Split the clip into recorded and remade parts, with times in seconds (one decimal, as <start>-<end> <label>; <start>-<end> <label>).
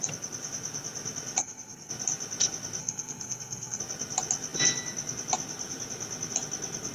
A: 0.0-1.4 recorded; 1.4-1.9 remade; 1.9-2.8 recorded; 2.8-3.8 remade; 3.8-6.9 recorded